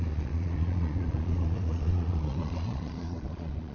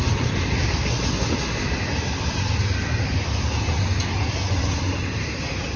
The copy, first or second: first